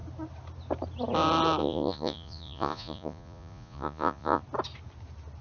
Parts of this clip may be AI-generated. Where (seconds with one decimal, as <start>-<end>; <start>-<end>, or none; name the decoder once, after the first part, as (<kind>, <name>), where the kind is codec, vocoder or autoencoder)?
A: 1.6-4.4 (vocoder, Vocos)